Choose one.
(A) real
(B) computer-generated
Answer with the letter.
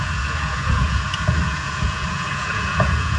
B